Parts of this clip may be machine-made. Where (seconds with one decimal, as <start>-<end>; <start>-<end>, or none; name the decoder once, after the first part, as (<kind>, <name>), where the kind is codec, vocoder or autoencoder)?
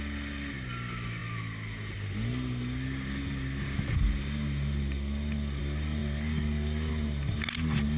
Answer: none